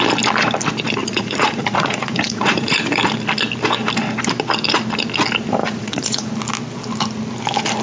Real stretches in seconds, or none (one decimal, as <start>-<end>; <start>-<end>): 0.0-1.0; 3.0-5.6; 6.3-7.8